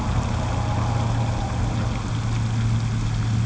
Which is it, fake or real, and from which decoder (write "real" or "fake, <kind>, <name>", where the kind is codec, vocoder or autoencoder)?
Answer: real